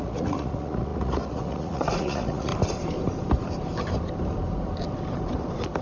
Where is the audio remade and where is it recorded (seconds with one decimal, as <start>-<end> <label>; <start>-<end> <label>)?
0.0-2.5 remade; 2.5-5.8 recorded